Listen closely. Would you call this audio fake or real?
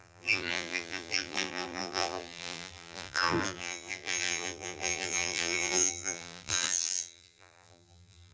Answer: fake